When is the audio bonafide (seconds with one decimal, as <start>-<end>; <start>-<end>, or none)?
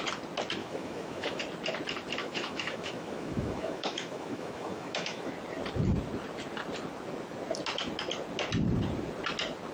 0.0-0.6; 1.4-2.2; 5.3-9.7